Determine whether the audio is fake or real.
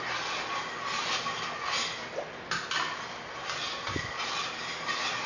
real